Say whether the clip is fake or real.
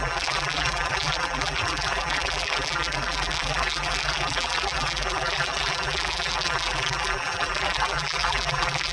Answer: fake